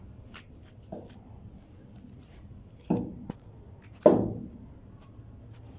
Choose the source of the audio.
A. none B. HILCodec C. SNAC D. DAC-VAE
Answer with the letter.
A